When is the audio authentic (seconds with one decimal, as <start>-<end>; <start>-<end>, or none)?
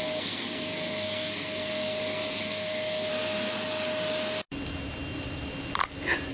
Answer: 3.1-6.3